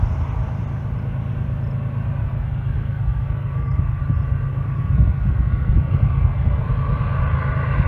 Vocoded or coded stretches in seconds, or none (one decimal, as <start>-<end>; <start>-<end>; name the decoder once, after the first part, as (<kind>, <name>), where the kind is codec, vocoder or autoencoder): 2.2-4.0 (codec, SNAC); 4.5-6.7

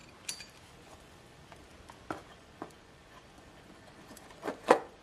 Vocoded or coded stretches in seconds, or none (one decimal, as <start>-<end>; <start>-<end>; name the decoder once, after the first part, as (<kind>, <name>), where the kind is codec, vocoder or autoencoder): 0.7-1.7 (vocoder, Vocos); 2.3-5.0

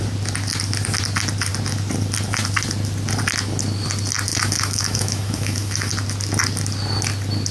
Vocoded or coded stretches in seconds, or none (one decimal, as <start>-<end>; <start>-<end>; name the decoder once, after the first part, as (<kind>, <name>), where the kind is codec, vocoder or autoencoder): 4.3-5.9 (autoencoder, DAC-VAE)

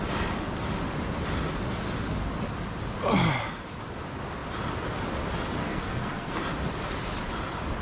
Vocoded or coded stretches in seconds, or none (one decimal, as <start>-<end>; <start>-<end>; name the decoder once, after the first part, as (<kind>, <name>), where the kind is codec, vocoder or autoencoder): 5.6-6.4 (codec, SNAC)

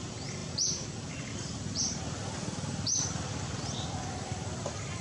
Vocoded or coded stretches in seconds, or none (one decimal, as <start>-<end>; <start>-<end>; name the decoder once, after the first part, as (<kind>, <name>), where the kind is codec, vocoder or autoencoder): 0.4-3.4 (vocoder, BigVGAN v2)